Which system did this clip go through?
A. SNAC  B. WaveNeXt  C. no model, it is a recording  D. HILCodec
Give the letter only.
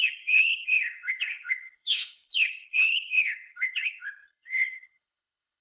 D